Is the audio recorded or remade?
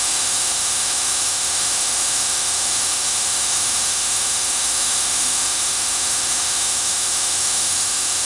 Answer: remade